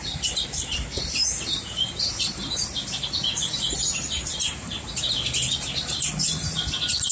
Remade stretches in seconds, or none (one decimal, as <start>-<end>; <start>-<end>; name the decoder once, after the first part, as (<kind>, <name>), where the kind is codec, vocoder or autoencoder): none

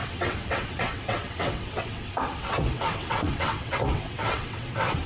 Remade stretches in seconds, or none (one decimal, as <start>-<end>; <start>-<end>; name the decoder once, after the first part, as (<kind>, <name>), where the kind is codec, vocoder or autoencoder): 0.0-5.1 (vocoder, WaveNeXt)

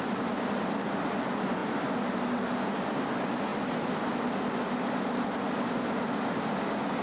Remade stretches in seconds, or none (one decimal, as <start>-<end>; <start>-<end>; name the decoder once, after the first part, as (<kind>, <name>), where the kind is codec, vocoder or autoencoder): none

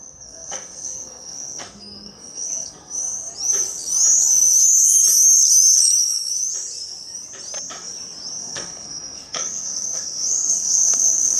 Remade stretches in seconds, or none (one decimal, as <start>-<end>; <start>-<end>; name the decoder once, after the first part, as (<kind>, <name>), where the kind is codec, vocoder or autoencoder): 0.0-3.3 (codec, SNAC); 8.4-11.4

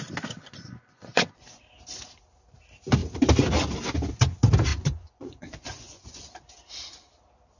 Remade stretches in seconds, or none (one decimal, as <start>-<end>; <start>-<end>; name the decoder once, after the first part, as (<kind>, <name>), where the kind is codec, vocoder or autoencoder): 0.4-1.6 (vocoder, Vocos); 4.7-6.2

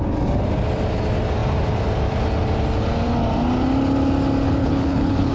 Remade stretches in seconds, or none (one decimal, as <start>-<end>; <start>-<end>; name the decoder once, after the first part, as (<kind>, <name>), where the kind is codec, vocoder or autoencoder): 4.6-5.3 (codec, HILCodec)

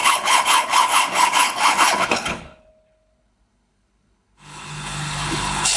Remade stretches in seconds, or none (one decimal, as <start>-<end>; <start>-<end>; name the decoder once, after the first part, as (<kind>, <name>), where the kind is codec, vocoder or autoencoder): 0.0-5.8 (codec, HILCodec)

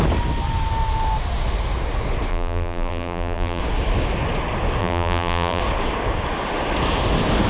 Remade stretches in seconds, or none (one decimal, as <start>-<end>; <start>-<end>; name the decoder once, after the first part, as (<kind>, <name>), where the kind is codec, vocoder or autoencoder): 2.3-3.6 (vocoder, BigVGAN v2); 4.8-5.6